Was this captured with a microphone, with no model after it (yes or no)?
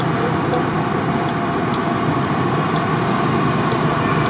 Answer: yes